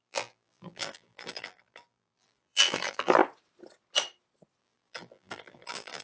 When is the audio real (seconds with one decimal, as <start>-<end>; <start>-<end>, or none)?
3.2-4.6